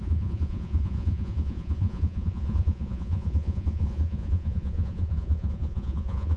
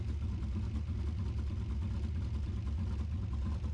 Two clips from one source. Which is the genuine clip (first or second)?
second